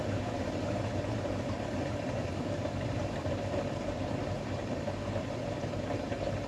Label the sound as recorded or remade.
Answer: remade